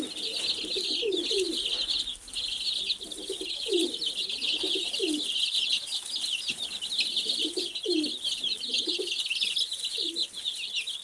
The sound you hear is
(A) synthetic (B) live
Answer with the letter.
B